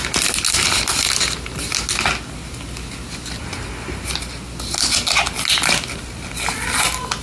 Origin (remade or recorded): recorded